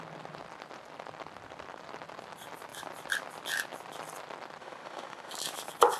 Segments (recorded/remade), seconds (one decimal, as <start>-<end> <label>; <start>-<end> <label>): 0.0-4.6 recorded; 4.6-5.3 remade; 5.3-6.0 recorded